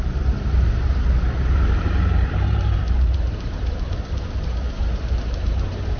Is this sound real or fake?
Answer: fake